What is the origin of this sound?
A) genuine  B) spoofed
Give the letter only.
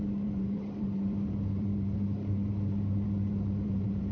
B